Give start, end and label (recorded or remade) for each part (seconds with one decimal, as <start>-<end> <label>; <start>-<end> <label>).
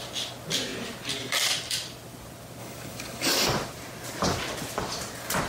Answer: 0.0-2.6 recorded; 2.6-3.3 remade; 3.3-5.5 recorded